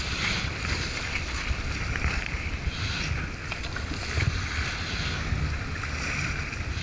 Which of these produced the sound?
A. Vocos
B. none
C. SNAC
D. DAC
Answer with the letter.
B